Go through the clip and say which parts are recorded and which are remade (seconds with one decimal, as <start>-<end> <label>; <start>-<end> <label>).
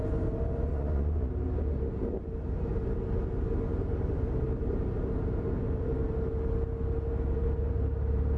0.0-0.7 recorded; 0.7-1.3 remade; 1.3-8.4 recorded